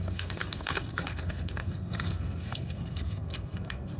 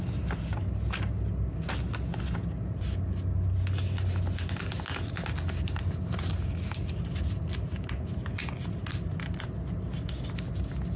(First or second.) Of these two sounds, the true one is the second